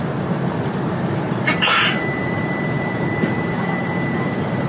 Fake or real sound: fake